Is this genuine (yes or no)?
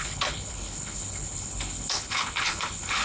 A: no